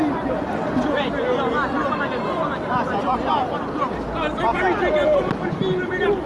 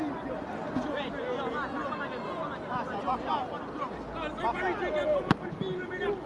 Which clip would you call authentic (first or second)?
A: second